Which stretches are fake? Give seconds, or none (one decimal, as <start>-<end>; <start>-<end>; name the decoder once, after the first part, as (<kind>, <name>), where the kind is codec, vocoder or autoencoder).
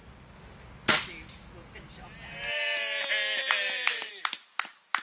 none